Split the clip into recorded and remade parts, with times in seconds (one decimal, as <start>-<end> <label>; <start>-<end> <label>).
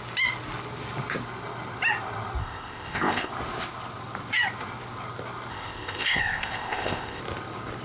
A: 0.0-2.4 recorded; 2.4-3.3 remade; 3.3-5.5 recorded; 5.5-7.2 remade; 7.2-7.8 recorded